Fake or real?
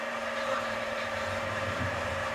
fake